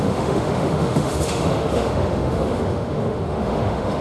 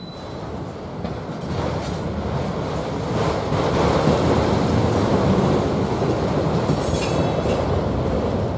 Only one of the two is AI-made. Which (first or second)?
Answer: first